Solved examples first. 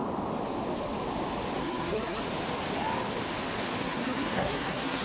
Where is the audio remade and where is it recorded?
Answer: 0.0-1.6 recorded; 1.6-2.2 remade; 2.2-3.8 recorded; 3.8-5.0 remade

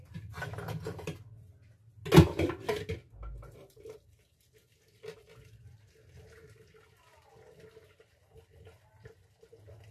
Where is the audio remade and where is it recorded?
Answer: 0.0-9.9 recorded